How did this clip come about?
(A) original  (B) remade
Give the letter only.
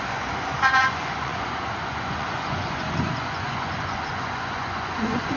B